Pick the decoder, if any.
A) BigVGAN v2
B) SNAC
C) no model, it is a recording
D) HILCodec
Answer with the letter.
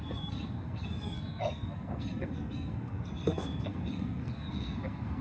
B